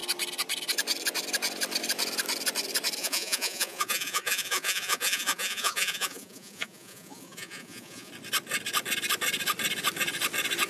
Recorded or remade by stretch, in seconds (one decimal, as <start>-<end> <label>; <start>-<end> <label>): 0.0-3.0 recorded; 3.0-8.1 remade; 8.1-10.7 recorded